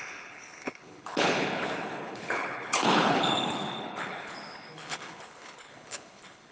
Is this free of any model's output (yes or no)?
no